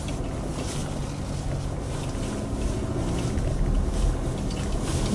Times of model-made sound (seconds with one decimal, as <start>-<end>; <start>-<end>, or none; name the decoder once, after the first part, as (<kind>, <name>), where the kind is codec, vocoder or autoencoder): none